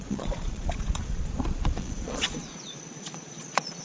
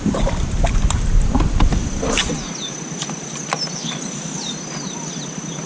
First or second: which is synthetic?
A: first